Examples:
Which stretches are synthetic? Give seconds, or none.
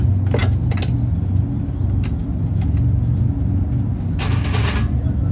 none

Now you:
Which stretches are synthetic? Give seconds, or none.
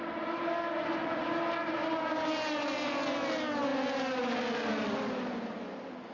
none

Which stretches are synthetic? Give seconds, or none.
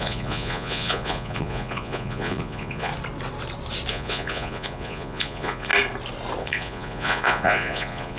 0.0-2.9 (vocoder, Vocos); 3.9-5.7; 6.4-8.2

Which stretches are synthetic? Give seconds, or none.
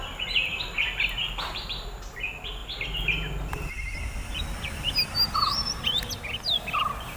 none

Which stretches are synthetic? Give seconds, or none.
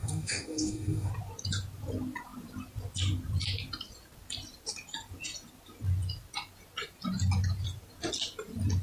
0.0-1.1 (codec, DAC)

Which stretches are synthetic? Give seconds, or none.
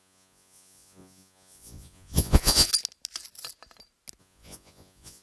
0.0-2.7 (vocoder, Vocos); 4.2-5.2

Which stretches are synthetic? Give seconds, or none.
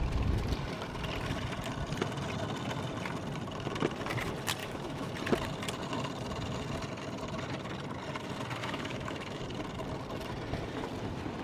4.6-5.1 (autoencoder, DAC-VAE); 8.6-9.4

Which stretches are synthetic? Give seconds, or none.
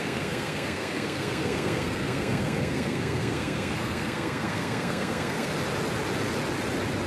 0.0-5.5 (codec, SNAC)